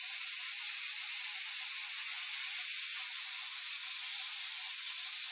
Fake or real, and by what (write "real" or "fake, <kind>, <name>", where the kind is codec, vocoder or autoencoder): real